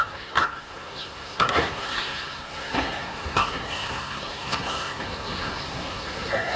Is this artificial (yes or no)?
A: yes